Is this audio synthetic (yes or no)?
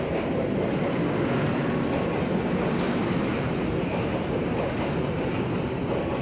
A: no